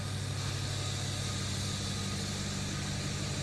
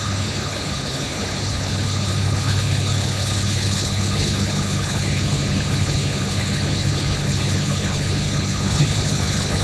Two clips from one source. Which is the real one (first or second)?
first